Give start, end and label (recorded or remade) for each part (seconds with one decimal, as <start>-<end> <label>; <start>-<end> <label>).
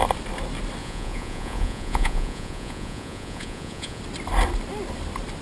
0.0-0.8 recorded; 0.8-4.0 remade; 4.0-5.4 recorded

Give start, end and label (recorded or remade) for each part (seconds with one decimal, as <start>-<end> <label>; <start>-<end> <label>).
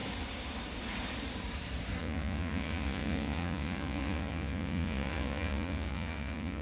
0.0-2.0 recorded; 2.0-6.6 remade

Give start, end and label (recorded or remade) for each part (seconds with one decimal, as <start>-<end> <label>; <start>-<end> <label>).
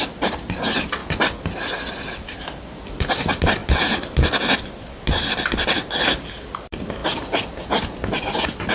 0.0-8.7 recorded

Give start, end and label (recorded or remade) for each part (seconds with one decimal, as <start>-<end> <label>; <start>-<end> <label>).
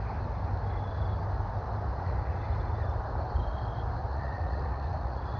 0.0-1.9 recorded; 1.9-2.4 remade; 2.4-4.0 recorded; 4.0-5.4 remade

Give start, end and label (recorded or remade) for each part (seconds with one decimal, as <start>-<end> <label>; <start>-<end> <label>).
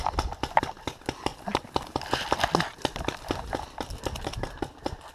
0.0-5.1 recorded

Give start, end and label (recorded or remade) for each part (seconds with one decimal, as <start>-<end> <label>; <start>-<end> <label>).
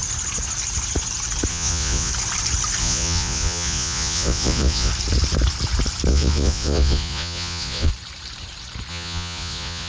0.0-1.5 recorded; 1.5-2.1 remade; 2.1-2.8 recorded; 2.8-4.9 remade; 4.9-6.1 recorded; 6.1-7.9 remade; 7.9-8.9 recorded; 8.9-9.9 remade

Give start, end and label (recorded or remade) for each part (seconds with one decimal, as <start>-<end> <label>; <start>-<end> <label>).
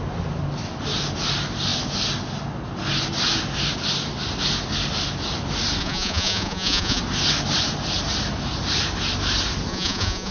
0.0-5.8 recorded; 5.8-7.0 remade; 7.0-9.7 recorded; 9.7-10.3 remade